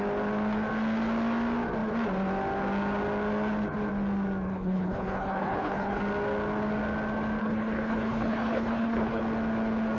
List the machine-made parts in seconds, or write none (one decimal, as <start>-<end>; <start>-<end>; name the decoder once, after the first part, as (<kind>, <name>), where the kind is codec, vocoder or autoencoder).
4.5-6.0 (codec, HILCodec); 7.4-9.2

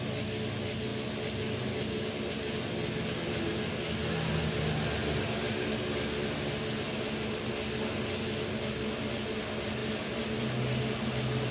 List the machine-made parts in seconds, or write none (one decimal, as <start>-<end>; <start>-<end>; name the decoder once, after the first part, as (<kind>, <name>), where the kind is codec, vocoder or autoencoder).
none

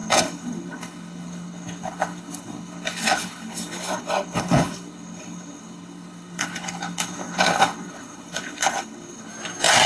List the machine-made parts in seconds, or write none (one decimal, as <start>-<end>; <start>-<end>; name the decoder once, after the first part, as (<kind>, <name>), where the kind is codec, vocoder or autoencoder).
0.0-9.3 (codec, HILCodec)

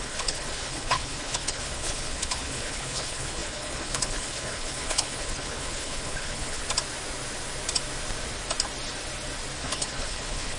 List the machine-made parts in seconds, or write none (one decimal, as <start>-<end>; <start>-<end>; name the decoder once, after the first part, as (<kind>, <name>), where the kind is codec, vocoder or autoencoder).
0.0-6.6 (codec, HILCodec); 9.6-10.6

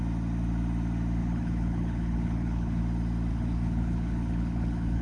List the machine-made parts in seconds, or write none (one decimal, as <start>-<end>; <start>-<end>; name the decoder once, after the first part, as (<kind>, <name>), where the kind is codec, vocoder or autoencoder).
1.2-2.8 (codec, HILCodec); 3.3-5.0

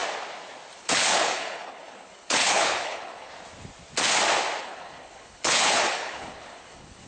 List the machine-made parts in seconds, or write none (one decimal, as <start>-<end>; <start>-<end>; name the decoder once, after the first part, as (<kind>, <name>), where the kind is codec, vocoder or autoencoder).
0.8-3.3 (codec, HILCodec); 4.6-7.1